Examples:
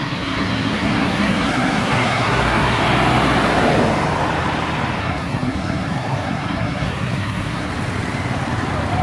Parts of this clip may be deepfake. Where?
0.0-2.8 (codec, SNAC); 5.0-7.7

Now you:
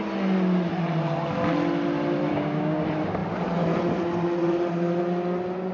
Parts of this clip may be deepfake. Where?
2.3-2.8 (codec, DAC)

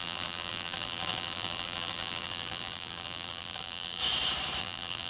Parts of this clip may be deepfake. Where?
0.0-4.0 (vocoder, BigVGAN v2); 4.6-5.1

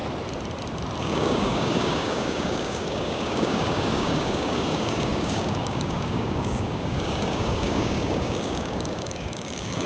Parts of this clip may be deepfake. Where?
1.0-9.9 (codec, DAC)

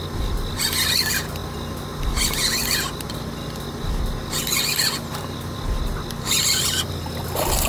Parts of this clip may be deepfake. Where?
none

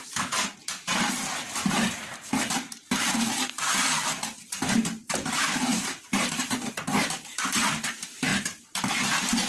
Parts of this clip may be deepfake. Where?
5.0-6.6 (vocoder, BigVGAN v2); 8.3-8.9

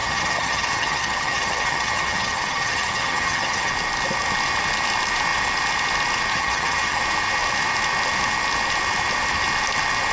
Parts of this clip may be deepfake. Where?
0.0-3.7 (vocoder, HiFi-GAN); 6.3-7.0